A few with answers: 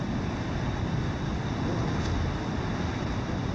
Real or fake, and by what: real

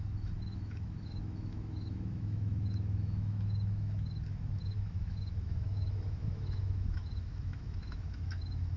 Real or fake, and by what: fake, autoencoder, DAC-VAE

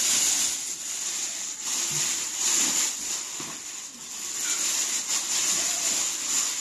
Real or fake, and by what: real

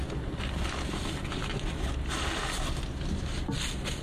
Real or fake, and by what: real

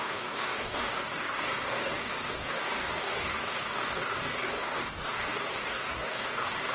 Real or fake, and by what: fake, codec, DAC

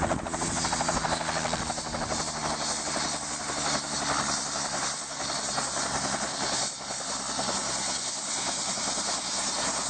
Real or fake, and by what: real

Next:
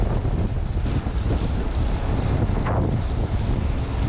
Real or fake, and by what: real